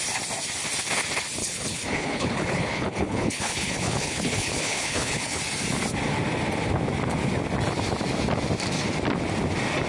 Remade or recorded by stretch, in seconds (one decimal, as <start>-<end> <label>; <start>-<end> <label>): 0.0-1.4 recorded; 1.4-5.4 remade; 5.4-9.9 recorded

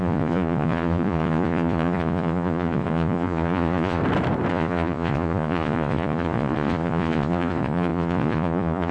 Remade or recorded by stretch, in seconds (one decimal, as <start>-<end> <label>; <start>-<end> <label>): 0.0-4.0 remade; 4.0-4.5 recorded; 4.5-8.9 remade

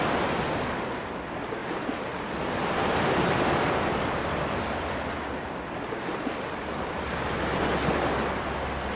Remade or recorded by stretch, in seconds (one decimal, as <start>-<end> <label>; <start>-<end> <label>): 0.0-9.0 recorded